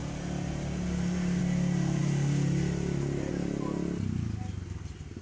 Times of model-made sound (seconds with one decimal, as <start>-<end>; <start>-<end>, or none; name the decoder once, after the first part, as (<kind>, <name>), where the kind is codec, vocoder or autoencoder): none